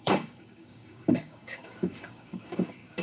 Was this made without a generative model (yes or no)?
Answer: no